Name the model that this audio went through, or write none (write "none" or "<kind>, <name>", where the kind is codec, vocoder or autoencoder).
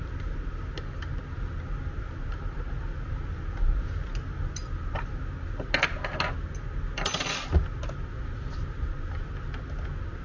none